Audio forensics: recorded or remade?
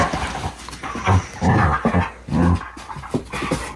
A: recorded